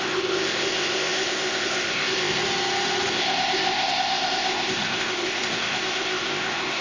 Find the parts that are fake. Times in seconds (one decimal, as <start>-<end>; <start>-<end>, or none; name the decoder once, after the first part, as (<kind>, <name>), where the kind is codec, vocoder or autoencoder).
0.0-2.4 (codec, ZipCodec); 3.1-6.8